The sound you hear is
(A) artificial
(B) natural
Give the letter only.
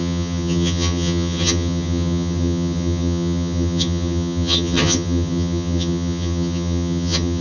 A